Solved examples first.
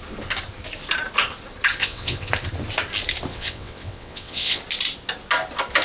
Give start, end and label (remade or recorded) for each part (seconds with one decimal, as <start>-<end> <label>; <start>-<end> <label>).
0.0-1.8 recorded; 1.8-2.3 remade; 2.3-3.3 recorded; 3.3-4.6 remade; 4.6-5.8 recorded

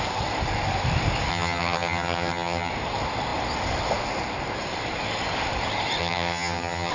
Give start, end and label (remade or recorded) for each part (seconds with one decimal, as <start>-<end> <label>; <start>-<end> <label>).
0.0-1.3 recorded; 1.3-2.7 remade; 2.7-6.0 recorded; 6.0-6.9 remade

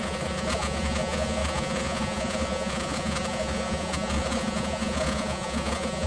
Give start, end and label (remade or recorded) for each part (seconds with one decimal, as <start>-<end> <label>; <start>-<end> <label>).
0.0-6.1 remade